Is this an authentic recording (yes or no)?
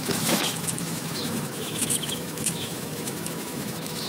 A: no